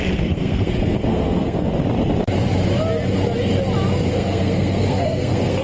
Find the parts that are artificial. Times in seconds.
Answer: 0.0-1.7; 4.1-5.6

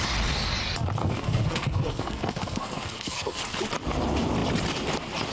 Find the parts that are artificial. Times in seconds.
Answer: 1.0-3.4

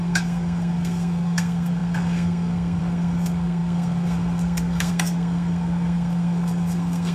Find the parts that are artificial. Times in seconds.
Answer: 0.0-7.1

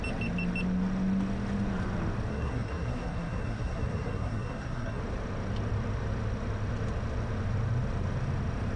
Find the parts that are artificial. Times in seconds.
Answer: 2.3-5.0

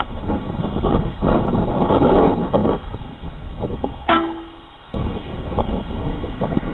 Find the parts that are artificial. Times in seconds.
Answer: 0.0-6.7